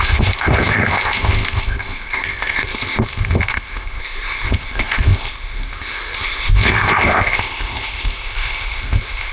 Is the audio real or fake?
fake